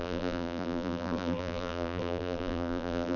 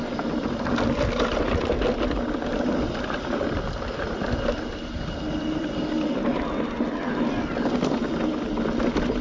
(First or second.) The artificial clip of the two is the first